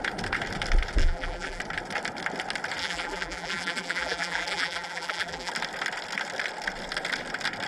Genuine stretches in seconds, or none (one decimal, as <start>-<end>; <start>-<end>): 0.0-1.0; 1.6-2.8; 5.5-7.7

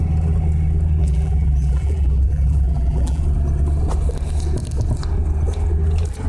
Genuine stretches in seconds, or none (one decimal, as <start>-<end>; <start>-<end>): 0.0-1.0; 3.2-6.3

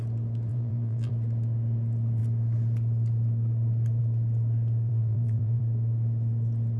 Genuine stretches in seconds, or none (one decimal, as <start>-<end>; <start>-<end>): 0.0-0.5; 1.1-4.9; 5.6-6.8

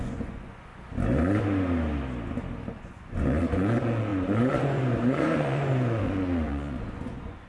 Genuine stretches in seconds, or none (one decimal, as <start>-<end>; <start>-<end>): 0.7-2.8

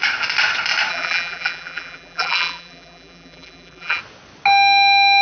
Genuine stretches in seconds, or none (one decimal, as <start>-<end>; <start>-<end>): 0.0-0.9; 4.0-5.2

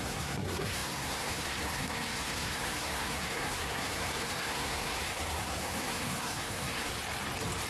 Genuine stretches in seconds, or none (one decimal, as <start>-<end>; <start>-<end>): 6.9-7.7

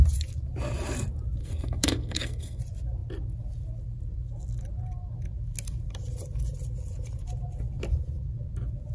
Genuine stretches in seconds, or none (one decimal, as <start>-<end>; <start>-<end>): 0.0-1.4; 2.6-8.9

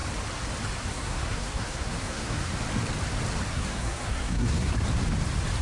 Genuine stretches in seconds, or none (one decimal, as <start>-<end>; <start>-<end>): 0.0-0.9; 2.5-3.5; 4.7-5.6